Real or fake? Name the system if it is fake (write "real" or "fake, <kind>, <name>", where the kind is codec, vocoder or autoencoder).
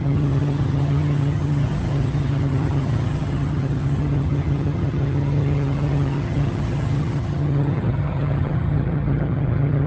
fake, vocoder, HiFi-GAN